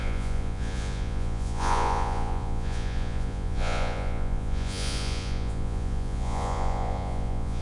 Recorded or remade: remade